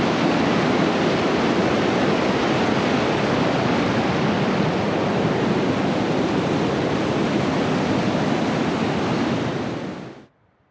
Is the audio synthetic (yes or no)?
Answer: no